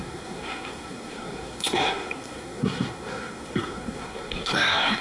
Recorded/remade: remade